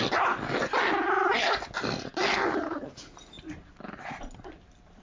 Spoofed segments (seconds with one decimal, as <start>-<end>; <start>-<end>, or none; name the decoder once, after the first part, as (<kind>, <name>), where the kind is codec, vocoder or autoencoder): none